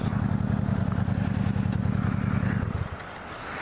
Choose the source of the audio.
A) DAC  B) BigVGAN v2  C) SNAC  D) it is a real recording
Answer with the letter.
D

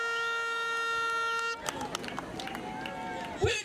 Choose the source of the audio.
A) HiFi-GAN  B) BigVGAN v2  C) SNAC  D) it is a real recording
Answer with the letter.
D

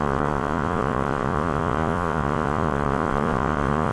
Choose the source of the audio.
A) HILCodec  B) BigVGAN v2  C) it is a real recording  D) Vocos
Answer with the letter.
D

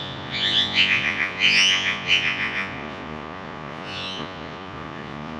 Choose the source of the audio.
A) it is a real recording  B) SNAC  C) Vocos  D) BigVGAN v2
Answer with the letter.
C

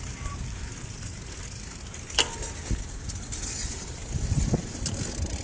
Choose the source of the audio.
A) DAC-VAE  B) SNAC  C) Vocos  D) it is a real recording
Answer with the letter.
D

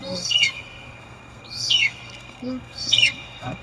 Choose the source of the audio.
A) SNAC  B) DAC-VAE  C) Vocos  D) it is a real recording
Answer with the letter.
A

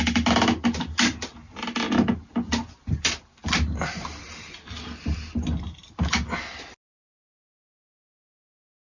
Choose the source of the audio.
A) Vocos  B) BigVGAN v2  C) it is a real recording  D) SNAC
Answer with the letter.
C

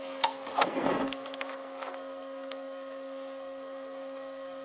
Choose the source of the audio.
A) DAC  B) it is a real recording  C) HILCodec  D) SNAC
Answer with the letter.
D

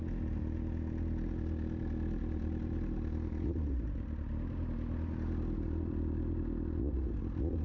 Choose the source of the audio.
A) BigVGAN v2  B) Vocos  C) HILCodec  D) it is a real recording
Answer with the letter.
D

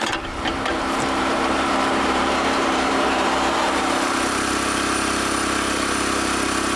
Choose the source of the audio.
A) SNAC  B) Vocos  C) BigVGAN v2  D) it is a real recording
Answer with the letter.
C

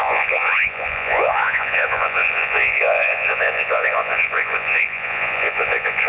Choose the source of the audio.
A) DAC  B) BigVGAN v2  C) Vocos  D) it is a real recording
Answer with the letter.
C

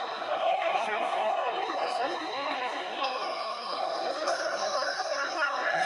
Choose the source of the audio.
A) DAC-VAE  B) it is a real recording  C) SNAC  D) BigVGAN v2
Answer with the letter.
C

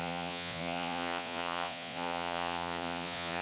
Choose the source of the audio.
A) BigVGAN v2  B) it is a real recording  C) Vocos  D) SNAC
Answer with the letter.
C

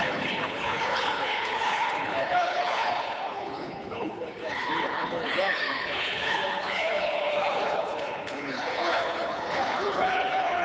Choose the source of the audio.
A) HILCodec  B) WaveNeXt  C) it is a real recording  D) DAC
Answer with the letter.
A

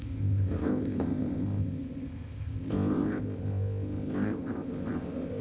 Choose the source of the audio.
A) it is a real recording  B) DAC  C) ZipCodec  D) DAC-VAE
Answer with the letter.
C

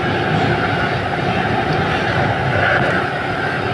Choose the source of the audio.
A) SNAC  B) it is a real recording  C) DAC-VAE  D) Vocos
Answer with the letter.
B